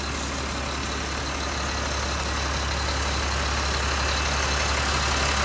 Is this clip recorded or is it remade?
recorded